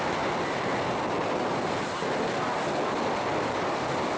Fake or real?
real